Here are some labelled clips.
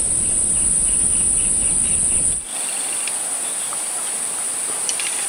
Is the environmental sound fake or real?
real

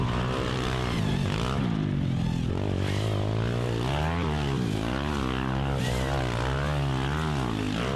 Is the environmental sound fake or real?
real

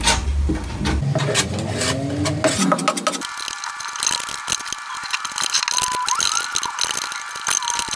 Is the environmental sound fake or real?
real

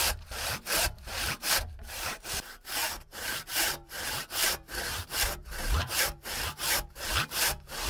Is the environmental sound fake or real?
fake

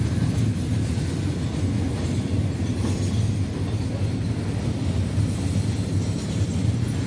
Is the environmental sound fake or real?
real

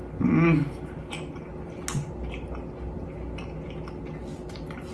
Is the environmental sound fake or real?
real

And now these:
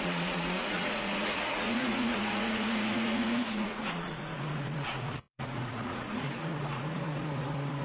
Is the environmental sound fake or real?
fake